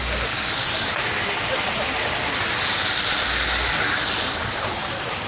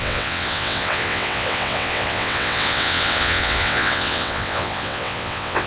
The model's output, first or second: second